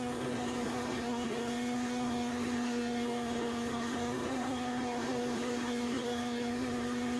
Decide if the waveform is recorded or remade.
remade